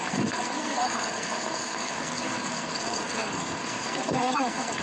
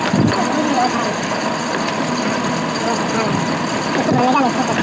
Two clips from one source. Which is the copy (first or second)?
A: first